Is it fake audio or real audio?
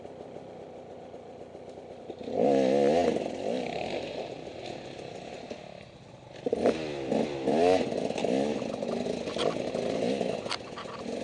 real